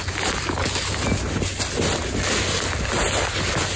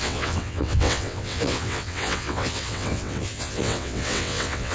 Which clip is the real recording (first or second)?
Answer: first